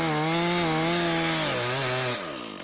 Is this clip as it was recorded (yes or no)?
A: yes